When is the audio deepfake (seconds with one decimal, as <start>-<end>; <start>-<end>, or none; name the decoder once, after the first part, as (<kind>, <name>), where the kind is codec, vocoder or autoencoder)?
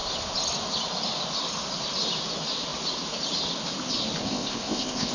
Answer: 4.2-5.1 (codec, ZipCodec)